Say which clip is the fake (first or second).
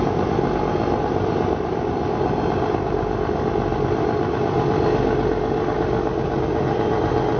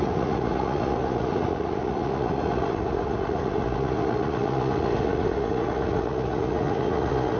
second